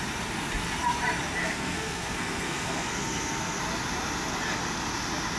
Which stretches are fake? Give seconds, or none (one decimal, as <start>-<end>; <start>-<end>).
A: 1.4-3.6